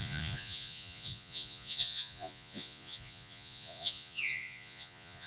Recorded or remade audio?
remade